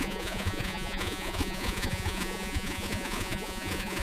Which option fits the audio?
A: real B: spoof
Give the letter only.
B